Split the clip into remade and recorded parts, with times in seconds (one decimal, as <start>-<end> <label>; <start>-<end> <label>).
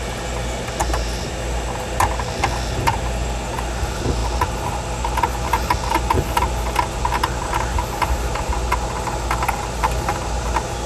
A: 0.0-0.8 recorded; 0.8-1.4 remade; 1.4-10.9 recorded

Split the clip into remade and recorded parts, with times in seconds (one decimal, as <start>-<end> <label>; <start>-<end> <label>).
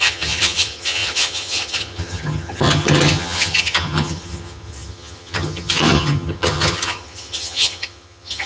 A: 0.0-8.5 remade